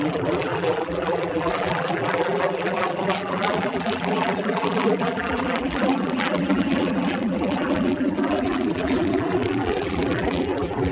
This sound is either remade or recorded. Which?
remade